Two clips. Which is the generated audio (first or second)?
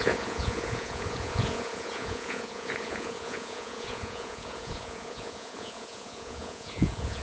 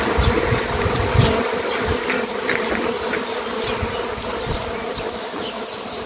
first